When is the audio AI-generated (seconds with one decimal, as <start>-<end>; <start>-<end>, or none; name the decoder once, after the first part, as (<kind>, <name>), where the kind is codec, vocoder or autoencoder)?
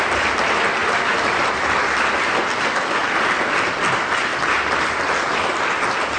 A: 0.8-1.7 (vocoder, BigVGAN v2)